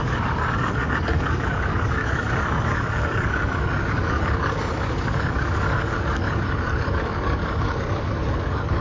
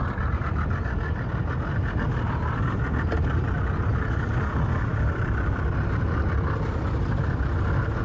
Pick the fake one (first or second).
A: first